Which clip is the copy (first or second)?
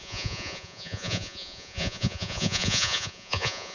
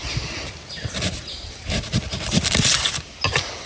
first